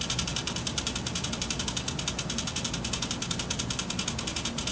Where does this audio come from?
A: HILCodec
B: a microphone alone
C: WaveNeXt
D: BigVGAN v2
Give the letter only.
B